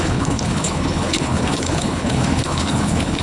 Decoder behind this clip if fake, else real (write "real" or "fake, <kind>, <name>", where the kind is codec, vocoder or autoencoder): fake, codec, HILCodec